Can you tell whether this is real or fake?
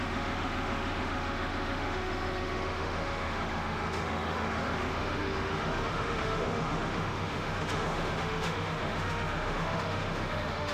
fake